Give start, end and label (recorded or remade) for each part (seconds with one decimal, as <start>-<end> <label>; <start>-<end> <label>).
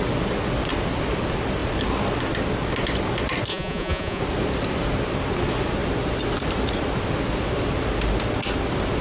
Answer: 0.0-3.5 recorded; 3.5-4.2 remade; 4.2-9.0 recorded